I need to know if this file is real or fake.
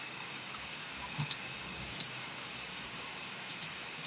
fake